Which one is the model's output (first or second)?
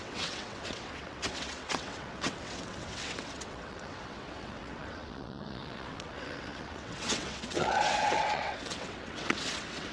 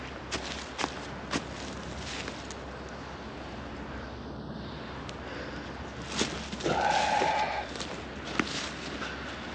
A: first